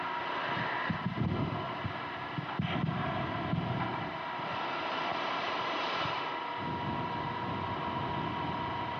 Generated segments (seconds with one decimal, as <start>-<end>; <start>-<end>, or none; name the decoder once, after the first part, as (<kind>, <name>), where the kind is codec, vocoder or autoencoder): 1.1-1.7 (vocoder, BigVGAN v2); 5.1-6.2